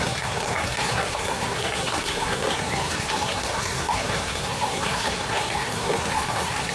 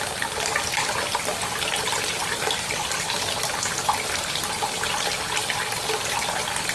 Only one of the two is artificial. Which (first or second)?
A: first